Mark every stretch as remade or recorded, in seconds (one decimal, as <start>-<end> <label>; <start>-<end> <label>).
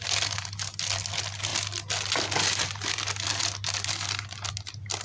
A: 0.0-5.0 recorded